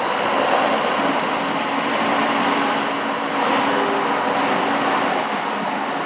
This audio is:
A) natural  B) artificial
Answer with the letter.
A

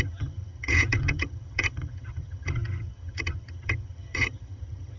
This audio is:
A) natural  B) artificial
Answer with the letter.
B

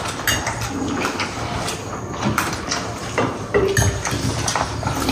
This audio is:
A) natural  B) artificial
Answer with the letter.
A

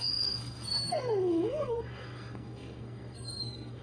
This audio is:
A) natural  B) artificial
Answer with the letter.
B